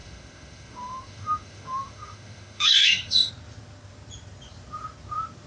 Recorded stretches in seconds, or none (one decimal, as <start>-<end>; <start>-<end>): 3.3-5.5